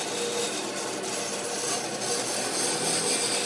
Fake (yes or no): no